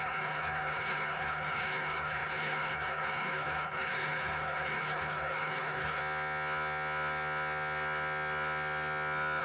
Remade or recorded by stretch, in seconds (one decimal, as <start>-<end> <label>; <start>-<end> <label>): 0.0-6.0 remade; 6.0-9.4 recorded